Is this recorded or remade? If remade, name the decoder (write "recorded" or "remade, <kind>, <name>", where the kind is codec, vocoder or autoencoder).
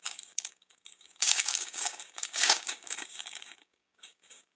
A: remade, codec, DAC